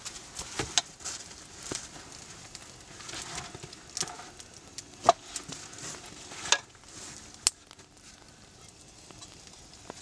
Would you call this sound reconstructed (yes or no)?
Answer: no